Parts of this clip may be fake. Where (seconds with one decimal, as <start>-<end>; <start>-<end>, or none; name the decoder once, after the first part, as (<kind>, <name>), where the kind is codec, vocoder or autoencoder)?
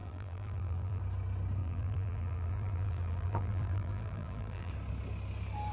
0.0-1.0 (vocoder, BigVGAN v2); 1.6-4.7